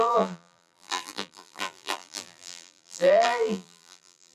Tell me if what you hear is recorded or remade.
remade